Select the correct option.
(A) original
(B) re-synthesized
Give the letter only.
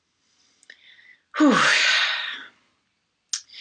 A